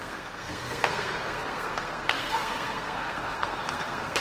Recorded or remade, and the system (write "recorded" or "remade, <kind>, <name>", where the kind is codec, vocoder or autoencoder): remade, codec, SNAC